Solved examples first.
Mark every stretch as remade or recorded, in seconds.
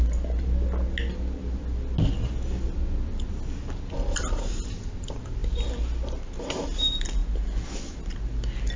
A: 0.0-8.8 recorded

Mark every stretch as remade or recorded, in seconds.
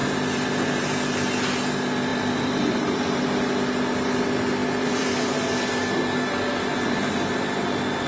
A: 0.0-0.5 remade; 0.5-2.1 recorded; 2.1-3.2 remade; 3.2-4.6 recorded; 4.6-5.1 remade; 5.1-8.1 recorded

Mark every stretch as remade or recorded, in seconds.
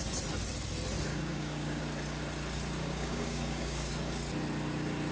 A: 0.0-1.1 recorded; 1.1-1.8 remade; 1.8-2.8 recorded; 2.8-3.9 remade; 3.9-5.1 recorded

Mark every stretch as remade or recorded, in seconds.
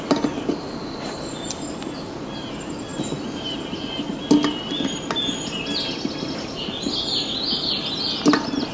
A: 0.0-8.7 recorded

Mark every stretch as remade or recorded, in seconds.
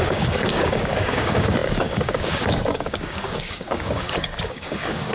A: 0.0-5.1 remade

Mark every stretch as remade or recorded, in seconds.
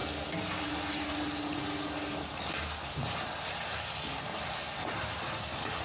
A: 0.0-5.8 recorded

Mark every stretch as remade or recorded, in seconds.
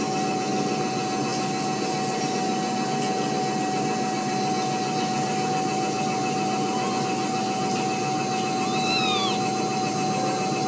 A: 0.0-10.7 recorded